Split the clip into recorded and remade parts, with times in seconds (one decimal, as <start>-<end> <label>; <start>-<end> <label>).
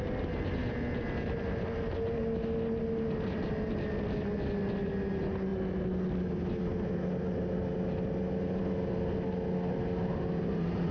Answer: 0.0-10.9 recorded